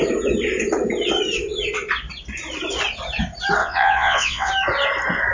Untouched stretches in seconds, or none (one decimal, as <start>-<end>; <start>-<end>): 0.0-3.6; 4.5-5.3